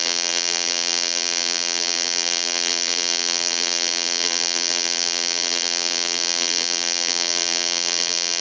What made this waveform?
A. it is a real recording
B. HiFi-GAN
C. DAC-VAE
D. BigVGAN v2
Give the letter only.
D